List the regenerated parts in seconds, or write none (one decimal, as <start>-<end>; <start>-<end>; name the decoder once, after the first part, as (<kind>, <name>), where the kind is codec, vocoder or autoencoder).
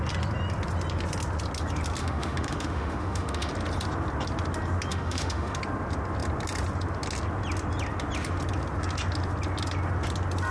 2.0-3.5 (autoencoder, DAC-VAE); 4.9-5.6